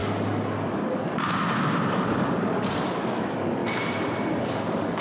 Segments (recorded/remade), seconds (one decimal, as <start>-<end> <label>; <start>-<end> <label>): 0.0-1.9 recorded; 1.9-3.6 remade; 3.6-4.4 recorded; 4.4-5.0 remade